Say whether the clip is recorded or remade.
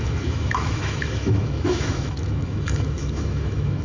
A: remade